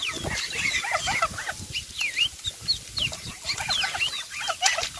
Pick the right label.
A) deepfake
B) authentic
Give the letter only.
B